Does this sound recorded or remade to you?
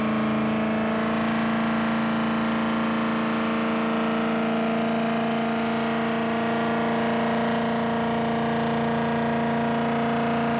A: recorded